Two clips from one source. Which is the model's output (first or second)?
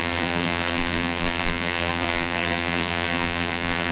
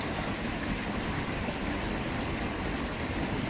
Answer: first